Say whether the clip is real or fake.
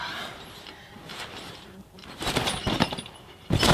fake